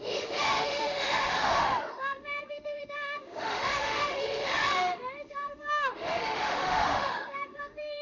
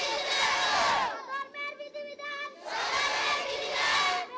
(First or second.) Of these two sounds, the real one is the second